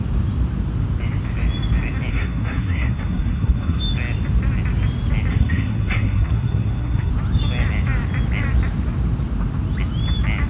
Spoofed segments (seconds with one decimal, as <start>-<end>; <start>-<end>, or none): 2.1-3.8; 5.3-7.1